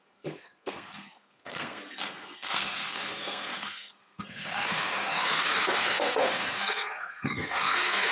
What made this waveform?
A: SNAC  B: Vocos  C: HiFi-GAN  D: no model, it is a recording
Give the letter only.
A